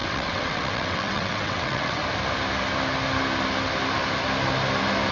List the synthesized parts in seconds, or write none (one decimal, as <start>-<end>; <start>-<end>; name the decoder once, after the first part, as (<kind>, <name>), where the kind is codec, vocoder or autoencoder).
0.0-2.0 (vocoder, WaveNeXt)